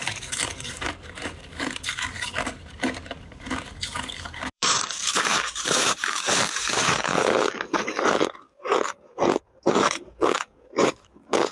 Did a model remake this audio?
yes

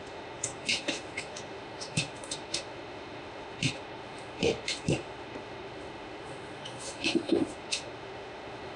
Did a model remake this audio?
yes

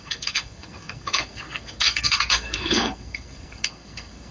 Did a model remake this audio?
yes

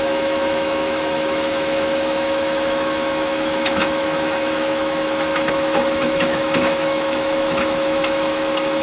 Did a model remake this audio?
yes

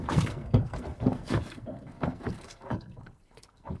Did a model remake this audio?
yes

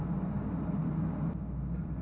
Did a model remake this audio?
no